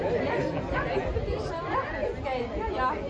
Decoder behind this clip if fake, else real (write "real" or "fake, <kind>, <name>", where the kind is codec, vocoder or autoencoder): real